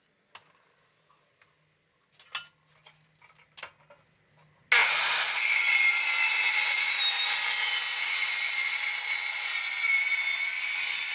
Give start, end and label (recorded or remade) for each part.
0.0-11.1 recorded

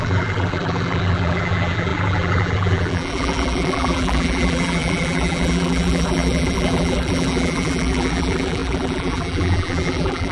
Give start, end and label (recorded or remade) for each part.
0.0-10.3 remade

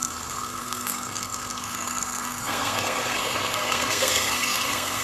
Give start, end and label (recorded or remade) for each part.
0.0-5.0 remade

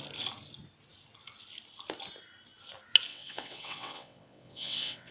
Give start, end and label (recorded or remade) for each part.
0.0-3.1 recorded; 3.1-5.1 remade